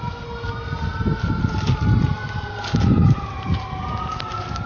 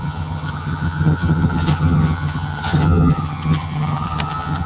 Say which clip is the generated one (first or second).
second